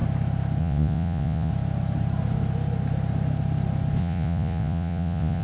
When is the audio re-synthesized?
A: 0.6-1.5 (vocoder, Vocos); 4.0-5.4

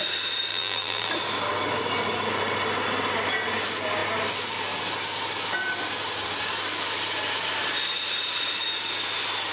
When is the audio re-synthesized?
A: 0.5-1.1 (vocoder, BigVGAN v2)

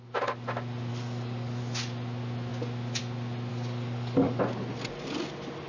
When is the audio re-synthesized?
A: 0.9-1.6 (codec, DAC); 3.5-4.4

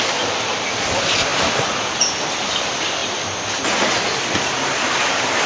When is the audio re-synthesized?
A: none

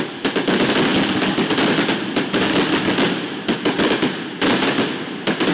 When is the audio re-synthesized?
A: none

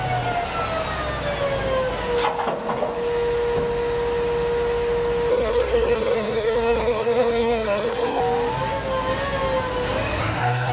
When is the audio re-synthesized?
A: 5.3-8.2 (codec, SNAC); 10.2-10.7

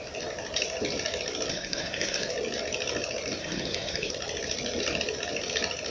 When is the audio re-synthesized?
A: 1.5-2.3 (codec, SNAC); 3.4-4.1